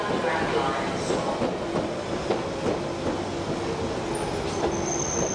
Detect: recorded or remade recorded